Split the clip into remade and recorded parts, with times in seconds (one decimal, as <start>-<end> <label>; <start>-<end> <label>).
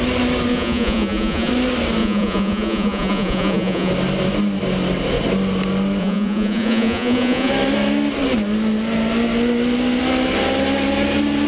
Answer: 0.0-0.5 recorded; 0.5-1.5 remade; 1.5-2.0 recorded; 2.0-3.9 remade; 3.9-6.0 recorded; 6.0-7.5 remade; 7.5-11.5 recorded